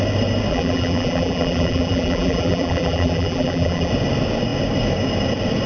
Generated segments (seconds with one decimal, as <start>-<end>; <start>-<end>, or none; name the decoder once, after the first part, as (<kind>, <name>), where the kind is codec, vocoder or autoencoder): 0.5-3.9 (vocoder, BigVGAN v2)